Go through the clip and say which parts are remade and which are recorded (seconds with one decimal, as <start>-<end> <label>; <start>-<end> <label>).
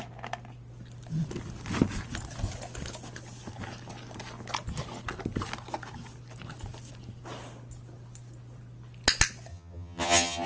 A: 0.0-9.5 recorded; 9.5-10.5 remade